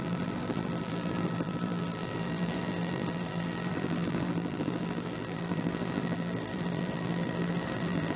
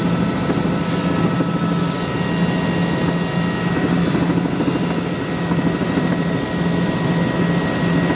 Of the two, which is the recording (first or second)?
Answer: second